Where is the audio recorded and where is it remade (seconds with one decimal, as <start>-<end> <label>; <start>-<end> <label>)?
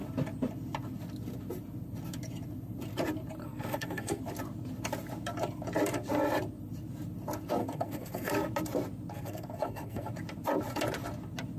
0.0-3.4 recorded; 3.4-4.2 remade; 4.2-7.6 recorded; 7.6-8.3 remade; 8.3-9.1 recorded; 9.1-10.1 remade; 10.1-11.6 recorded